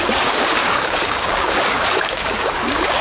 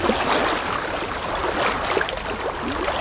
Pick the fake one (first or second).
first